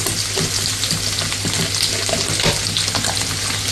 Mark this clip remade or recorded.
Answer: recorded